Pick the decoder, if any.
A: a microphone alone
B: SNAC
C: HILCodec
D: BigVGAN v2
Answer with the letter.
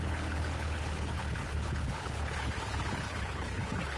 C